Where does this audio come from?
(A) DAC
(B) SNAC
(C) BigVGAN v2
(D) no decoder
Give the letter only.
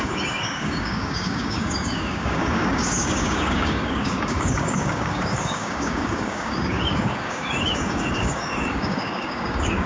A